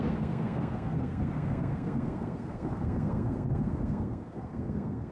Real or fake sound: fake